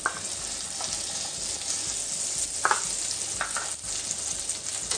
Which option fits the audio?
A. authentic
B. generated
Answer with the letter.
A